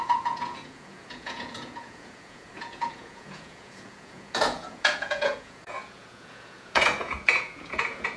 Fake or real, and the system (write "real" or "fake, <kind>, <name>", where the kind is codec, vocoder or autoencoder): fake, vocoder, Vocos